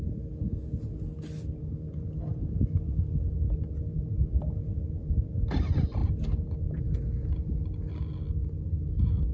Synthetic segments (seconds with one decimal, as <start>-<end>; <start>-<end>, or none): none